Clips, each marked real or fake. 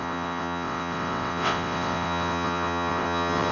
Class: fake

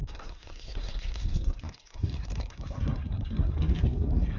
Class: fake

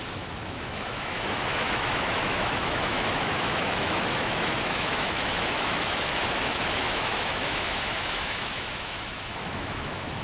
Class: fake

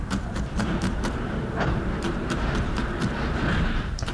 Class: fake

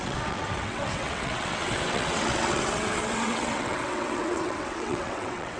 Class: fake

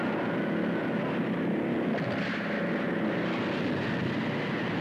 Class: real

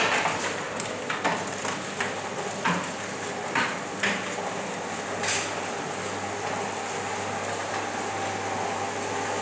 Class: real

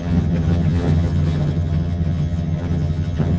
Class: fake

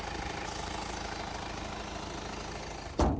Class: real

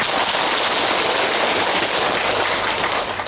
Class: real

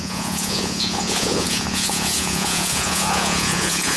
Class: fake